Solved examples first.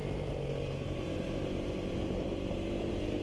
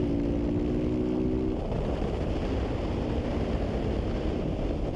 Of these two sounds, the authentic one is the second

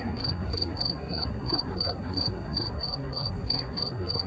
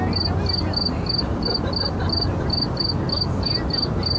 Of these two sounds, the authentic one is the second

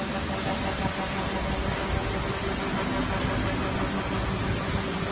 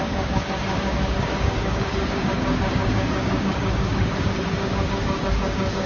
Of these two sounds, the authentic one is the first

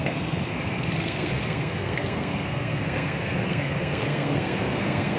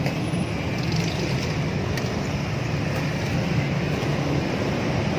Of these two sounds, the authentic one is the second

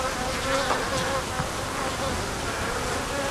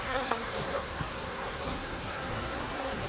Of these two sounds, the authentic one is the first